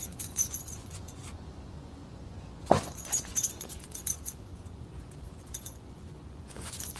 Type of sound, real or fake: fake